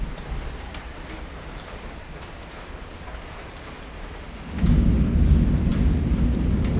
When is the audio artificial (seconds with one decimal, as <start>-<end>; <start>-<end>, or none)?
none